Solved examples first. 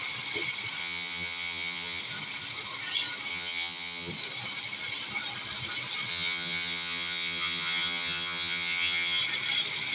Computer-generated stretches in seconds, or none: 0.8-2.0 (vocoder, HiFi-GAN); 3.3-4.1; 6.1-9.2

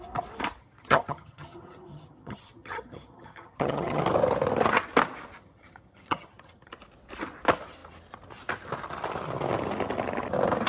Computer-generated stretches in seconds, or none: 0.6-4.0 (vocoder, HiFi-GAN); 5.4-6.7

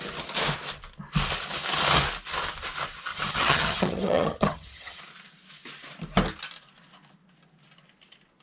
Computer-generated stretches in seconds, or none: 3.1-5.0 (vocoder, HiFi-GAN)

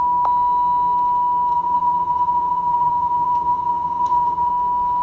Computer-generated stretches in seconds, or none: 1.5-4.5 (vocoder, HiFi-GAN)

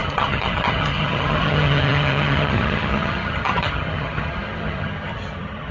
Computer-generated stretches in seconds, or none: 0.0-5.7 (vocoder, HiFi-GAN)